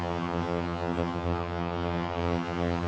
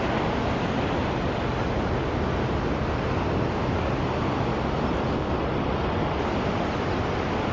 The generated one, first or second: first